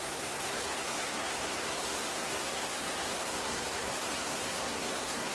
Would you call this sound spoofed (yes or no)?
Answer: yes